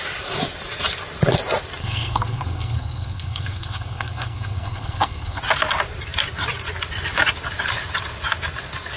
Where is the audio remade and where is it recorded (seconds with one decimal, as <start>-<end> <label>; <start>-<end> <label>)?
0.0-1.8 recorded; 1.8-5.4 remade; 5.4-9.0 recorded